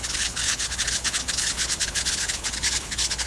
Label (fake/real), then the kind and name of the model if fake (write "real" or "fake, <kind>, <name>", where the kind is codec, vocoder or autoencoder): fake, codec, HILCodec